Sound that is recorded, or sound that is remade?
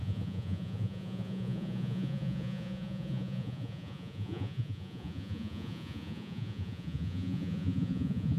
remade